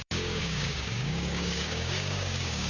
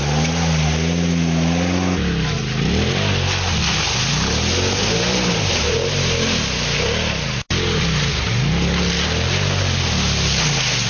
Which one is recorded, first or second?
second